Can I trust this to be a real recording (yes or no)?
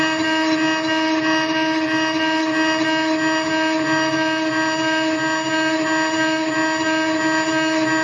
yes